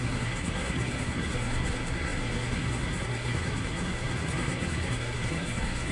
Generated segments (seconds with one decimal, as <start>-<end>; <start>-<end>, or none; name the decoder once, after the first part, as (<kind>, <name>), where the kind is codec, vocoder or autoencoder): 0.0-5.9 (codec, SNAC)